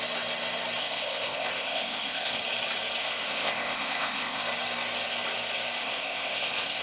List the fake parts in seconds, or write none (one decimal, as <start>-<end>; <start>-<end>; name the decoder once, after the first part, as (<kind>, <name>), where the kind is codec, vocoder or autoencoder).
0.8-2.4 (codec, ZipCodec); 3.0-4.4; 5.8-6.8

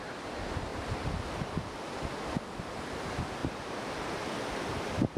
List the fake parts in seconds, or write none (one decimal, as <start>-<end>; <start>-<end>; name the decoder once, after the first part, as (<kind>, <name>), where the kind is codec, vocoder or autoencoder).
0.0-0.7 (vocoder, BigVGAN v2); 2.7-5.2

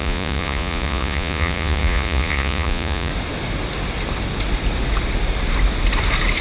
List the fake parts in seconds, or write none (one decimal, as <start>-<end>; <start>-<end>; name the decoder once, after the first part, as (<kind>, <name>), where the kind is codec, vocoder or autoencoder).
0.0-3.1 (vocoder, Vocos)

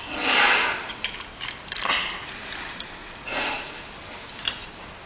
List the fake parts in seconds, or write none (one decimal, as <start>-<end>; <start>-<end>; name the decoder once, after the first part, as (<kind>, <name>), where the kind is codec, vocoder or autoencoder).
3.0-3.7 (vocoder, Vocos)

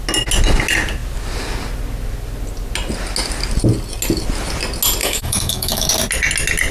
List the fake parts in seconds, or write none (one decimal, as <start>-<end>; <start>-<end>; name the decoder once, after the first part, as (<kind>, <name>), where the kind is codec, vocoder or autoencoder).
5.0-5.9 (autoencoder, DAC-VAE)

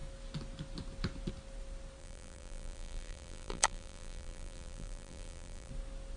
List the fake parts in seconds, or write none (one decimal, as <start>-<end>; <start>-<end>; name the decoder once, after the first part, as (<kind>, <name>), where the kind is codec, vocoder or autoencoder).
2.0-5.7 (vocoder, BigVGAN v2)

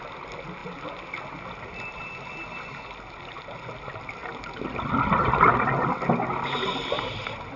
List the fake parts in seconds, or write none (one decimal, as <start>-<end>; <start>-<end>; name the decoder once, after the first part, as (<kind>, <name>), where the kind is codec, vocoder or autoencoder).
none

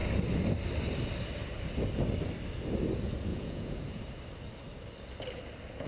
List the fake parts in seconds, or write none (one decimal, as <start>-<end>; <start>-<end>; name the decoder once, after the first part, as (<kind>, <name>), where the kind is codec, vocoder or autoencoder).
3.3-4.0 (vocoder, Vocos)